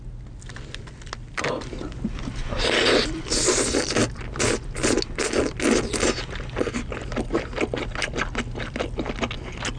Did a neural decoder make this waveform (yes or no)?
no